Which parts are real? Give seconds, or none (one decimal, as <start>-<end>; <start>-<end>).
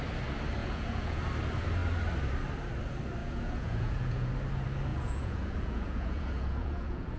0.0-0.6; 1.2-3.2; 4.3-4.9